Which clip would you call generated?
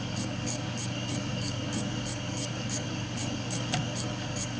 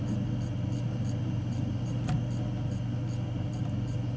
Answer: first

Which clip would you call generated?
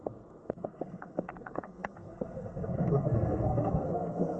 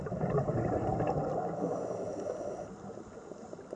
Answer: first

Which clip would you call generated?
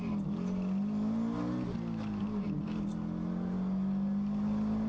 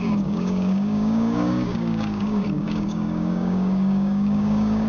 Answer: second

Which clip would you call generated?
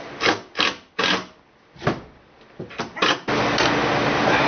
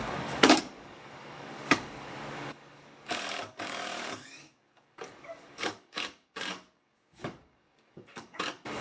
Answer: second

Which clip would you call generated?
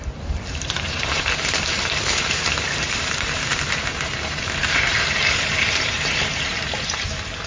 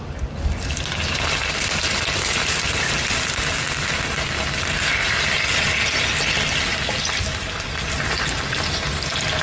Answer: first